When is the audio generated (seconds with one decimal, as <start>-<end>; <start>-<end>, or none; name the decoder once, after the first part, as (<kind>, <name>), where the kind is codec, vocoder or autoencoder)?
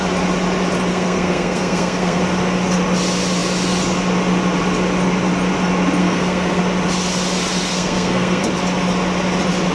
0.9-2.2 (codec, SNAC); 6.0-6.6; 7.7-8.4